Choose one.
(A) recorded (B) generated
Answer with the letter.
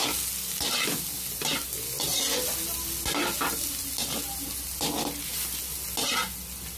A